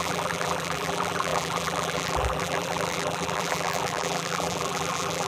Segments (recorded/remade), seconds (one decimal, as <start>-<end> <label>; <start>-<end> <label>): 0.0-5.3 remade